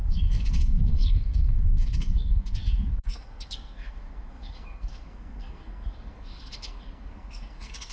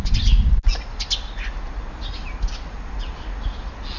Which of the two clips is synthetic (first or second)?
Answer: first